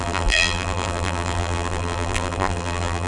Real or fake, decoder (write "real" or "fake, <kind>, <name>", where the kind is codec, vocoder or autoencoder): fake, vocoder, BigVGAN v2